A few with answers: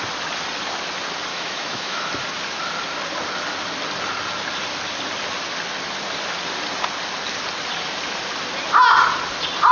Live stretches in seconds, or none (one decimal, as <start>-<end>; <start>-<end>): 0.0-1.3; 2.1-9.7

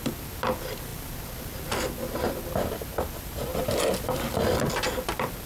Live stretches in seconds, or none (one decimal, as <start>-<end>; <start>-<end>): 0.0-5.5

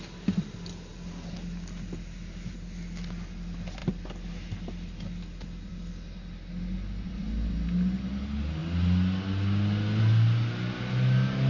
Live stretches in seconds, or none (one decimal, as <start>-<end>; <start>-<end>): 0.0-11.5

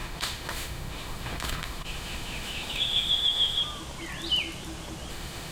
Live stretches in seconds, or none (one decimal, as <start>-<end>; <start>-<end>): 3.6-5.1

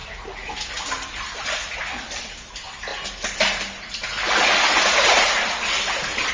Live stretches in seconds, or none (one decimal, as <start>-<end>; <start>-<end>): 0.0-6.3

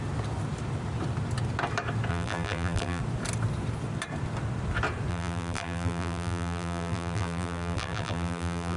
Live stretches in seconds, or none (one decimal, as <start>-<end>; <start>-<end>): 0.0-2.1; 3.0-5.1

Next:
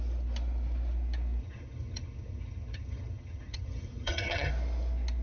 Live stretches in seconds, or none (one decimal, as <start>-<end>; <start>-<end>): 0.0-1.4; 4.5-5.2